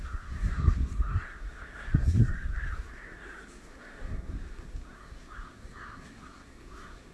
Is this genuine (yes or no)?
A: no